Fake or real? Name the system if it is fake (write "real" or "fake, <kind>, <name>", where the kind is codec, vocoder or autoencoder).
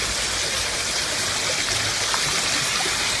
real